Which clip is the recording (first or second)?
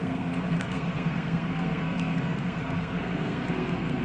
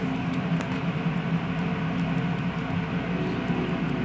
second